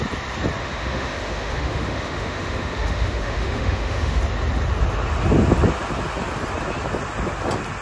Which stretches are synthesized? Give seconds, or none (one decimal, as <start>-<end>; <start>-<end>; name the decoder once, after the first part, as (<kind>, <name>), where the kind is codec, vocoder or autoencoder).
0.6-4.2 (autoencoder, DAC-VAE)